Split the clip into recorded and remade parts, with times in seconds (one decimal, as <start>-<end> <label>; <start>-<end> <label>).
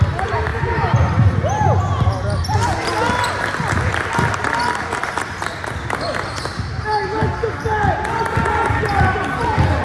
0.0-9.8 recorded